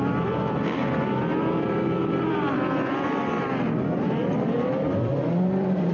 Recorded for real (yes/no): no